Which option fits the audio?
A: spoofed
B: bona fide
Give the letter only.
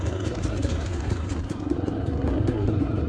A